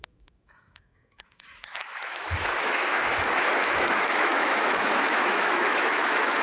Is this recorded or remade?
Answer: remade